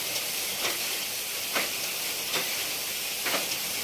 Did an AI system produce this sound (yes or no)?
yes